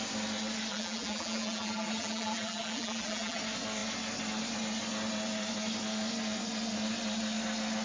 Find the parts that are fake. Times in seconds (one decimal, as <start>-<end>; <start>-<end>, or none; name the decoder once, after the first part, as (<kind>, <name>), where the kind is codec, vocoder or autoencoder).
0.7-3.4 (vocoder, BigVGAN v2)